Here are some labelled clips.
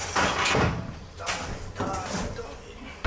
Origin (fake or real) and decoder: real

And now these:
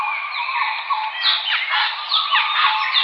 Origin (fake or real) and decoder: real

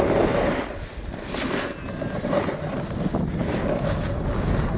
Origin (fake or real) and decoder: real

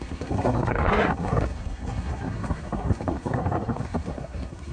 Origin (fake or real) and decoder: fake, codec, SNAC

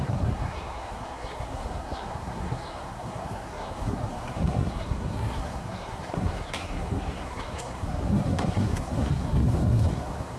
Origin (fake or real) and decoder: fake, codec, SNAC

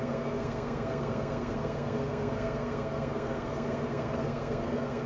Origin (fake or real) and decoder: fake, codec, SNAC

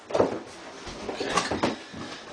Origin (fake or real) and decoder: real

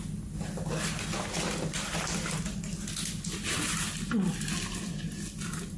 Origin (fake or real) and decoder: real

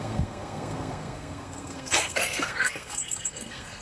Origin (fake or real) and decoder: fake, codec, SNAC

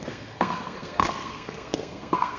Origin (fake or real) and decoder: fake, codec, SNAC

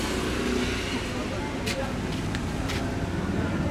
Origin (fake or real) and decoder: real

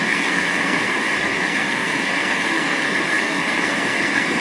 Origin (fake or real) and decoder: fake, codec, SNAC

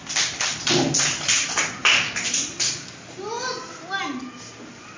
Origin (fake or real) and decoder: real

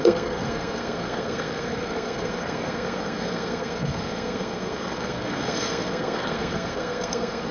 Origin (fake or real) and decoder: fake, codec, SNAC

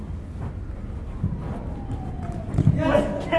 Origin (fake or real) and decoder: real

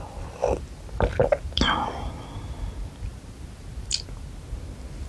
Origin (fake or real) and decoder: real